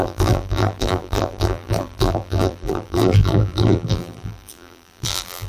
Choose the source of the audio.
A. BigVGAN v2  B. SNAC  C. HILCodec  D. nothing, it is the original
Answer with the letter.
A